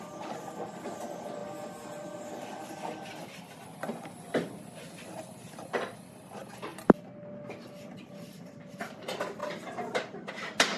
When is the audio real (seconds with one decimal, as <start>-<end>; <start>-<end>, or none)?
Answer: 0.0-9.4; 10.3-10.8